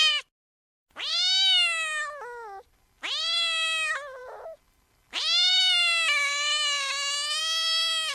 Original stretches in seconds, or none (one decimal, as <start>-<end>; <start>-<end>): 0.0-7.4

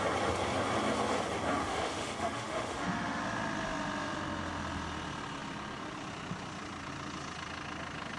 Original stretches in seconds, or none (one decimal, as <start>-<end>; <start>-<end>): 0.0-1.6; 3.2-8.2

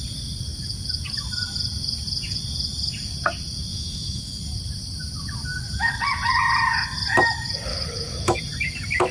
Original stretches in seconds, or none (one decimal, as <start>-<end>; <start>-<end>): 0.0-3.7; 4.4-7.7; 8.4-9.1

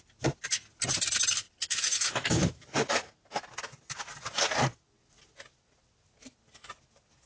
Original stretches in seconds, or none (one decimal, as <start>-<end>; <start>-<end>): 0.0-1.6; 3.1-7.3

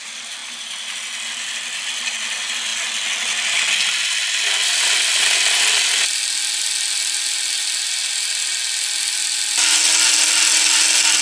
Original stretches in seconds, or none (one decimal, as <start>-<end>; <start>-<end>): 0.0-11.2